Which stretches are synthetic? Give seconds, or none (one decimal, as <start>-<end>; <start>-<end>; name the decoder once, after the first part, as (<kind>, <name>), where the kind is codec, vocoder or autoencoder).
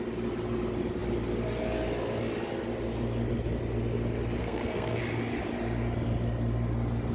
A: 4.4-5.0 (codec, SNAC)